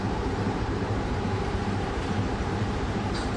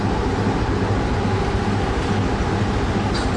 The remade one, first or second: first